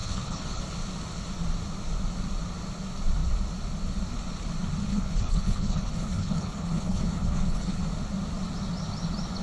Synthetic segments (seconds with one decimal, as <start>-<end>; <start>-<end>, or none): 0.0-0.6; 4.9-7.8